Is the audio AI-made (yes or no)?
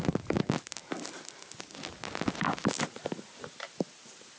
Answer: no